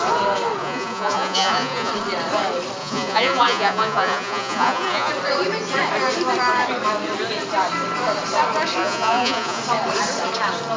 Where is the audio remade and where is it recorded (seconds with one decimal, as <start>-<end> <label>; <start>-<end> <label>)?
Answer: 0.0-0.6 recorded; 0.6-1.9 remade; 1.9-2.8 recorded; 2.8-5.1 remade; 5.1-8.8 recorded; 8.8-9.6 remade; 9.6-10.8 recorded